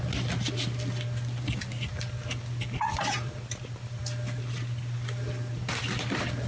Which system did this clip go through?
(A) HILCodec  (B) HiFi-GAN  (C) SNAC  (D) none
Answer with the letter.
D